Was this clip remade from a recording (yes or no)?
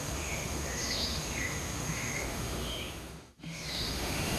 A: yes